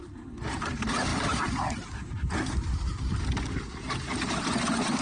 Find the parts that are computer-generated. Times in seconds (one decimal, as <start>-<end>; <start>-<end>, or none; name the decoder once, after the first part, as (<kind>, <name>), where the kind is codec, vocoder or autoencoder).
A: none